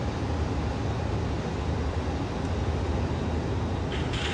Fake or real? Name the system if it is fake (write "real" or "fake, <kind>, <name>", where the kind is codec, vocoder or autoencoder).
real